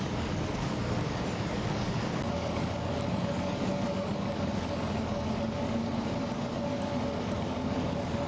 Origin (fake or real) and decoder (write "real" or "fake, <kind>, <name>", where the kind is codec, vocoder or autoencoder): fake, codec, DAC